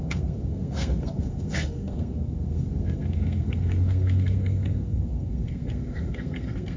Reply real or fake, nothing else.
fake